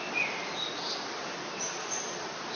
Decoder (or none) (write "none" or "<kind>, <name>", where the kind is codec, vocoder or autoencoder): none